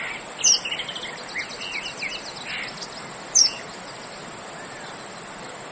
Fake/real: real